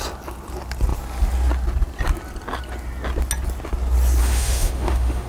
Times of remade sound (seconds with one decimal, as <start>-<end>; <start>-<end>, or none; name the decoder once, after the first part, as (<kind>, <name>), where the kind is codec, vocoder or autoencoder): 4.2-5.3 (autoencoder, DAC-VAE)

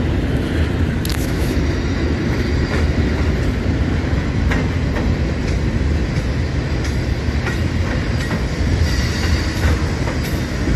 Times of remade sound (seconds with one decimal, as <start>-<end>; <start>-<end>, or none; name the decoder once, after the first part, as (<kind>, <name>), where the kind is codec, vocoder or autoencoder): 1.1-1.6 (autoencoder, DAC-VAE)

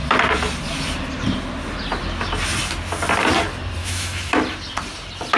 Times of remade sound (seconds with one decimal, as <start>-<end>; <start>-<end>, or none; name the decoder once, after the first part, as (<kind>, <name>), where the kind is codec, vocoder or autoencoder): 3.8-4.4 (autoencoder, DAC-VAE)

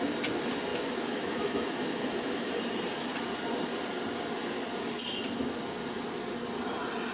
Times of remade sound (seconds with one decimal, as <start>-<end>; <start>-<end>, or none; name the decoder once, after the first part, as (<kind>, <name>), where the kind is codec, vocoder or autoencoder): 0.7-2.5 (autoencoder, DAC-VAE)

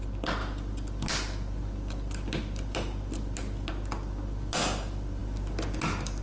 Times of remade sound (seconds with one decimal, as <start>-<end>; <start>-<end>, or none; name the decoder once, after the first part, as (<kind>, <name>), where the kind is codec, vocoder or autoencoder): none

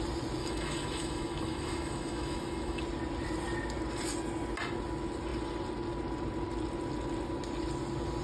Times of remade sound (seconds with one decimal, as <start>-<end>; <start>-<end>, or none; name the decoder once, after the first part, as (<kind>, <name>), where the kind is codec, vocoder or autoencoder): 0.4-2.8 (autoencoder, DAC-VAE)